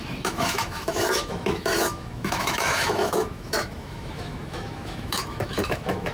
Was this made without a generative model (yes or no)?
no